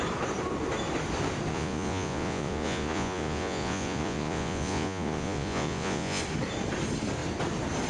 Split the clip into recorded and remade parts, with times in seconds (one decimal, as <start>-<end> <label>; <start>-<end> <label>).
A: 0.0-1.5 recorded; 1.5-6.2 remade; 6.2-7.9 recorded